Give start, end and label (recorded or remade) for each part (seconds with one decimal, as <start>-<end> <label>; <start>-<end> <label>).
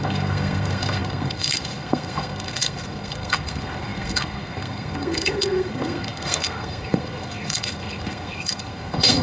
0.0-9.2 remade